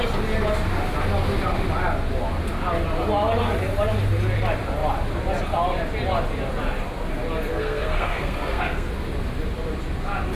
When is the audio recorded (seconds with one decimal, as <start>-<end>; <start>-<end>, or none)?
0.0-7.5; 8.9-10.3